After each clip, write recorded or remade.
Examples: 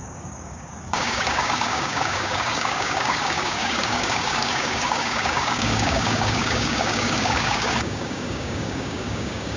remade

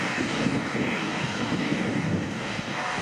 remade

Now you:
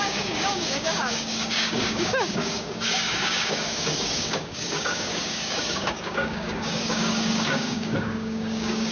remade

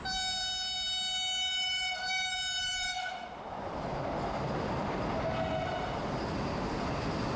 recorded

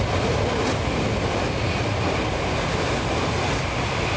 recorded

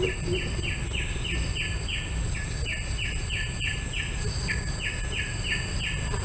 recorded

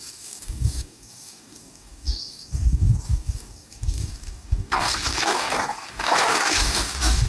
remade